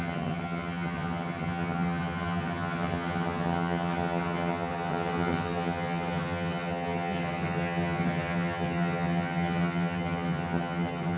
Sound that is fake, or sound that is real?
fake